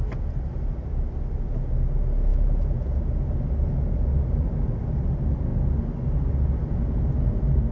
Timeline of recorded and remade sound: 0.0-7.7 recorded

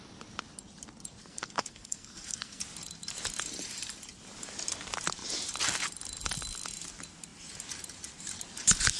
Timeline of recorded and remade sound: 0.0-1.2 recorded; 1.2-2.6 remade; 2.6-9.0 recorded

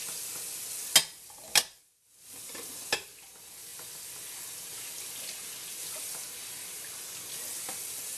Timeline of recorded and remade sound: 0.0-8.2 recorded

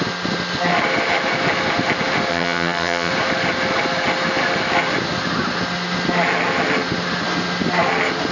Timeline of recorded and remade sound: 0.0-2.3 recorded; 2.3-3.1 remade; 3.1-8.3 recorded

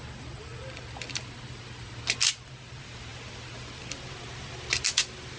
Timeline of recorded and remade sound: 0.0-5.4 recorded

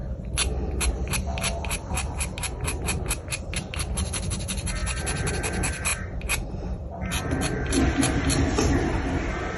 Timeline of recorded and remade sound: 0.0-9.6 recorded

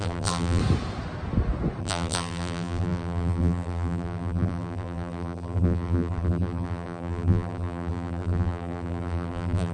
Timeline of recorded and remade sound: 0.0-0.6 remade; 0.6-1.8 recorded; 1.8-9.7 remade